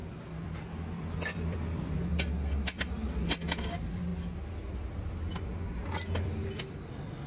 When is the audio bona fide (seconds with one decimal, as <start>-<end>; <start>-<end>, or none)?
2.1-3.6; 4.1-6.7